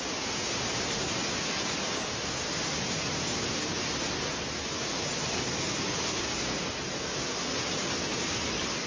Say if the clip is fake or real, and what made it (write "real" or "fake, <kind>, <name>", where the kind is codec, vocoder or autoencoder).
real